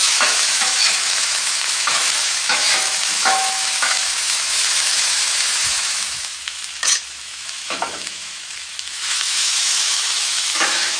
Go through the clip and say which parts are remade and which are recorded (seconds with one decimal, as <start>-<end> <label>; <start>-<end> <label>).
0.0-11.0 remade